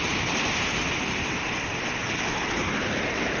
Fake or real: real